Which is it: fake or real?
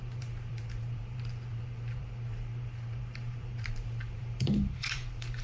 fake